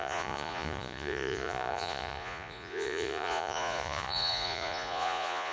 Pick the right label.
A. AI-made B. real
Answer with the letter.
A